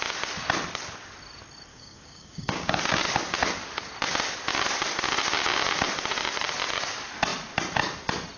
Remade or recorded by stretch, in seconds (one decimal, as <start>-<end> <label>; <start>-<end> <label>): 0.0-1.7 recorded; 1.7-2.8 remade; 2.8-8.4 recorded